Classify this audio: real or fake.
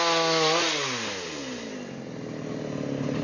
real